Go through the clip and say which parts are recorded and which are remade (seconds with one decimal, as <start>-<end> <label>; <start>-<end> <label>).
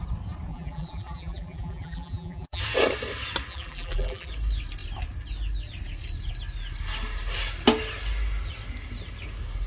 0.0-0.5 recorded; 0.5-2.6 remade; 2.6-3.5 recorded; 3.5-4.3 remade; 4.3-9.7 recorded